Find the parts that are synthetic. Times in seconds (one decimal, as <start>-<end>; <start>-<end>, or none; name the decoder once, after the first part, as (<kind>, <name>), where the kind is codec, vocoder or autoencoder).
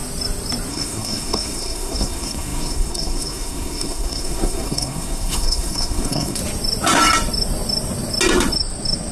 0.7-6.4 (codec, SNAC)